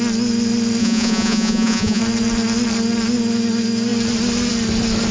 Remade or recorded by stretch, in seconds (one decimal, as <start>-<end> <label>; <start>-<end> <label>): 0.0-0.8 recorded; 0.8-2.0 remade; 2.0-5.1 recorded